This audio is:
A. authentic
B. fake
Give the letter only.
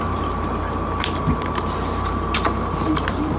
B